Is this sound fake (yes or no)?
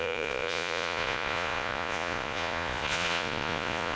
yes